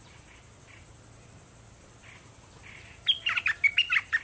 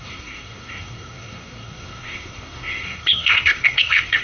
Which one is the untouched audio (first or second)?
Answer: first